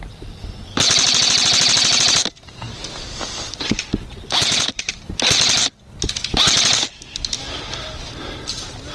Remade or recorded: recorded